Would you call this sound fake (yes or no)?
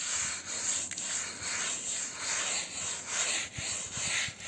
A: no